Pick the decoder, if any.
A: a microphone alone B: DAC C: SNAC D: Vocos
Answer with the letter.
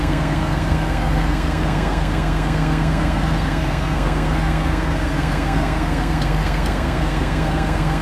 C